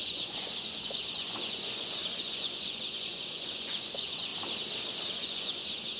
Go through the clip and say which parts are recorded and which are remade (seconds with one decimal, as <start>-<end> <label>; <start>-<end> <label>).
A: 0.0-4.3 remade; 4.3-5.1 recorded; 5.1-6.0 remade